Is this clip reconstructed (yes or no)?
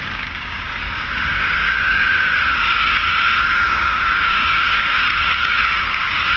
yes